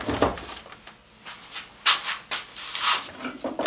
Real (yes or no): yes